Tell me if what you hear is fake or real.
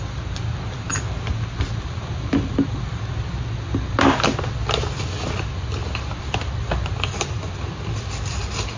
real